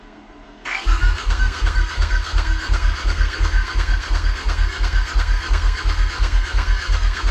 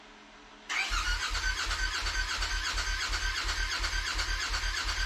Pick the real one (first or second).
second